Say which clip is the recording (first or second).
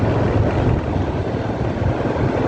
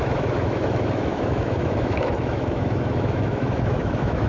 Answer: first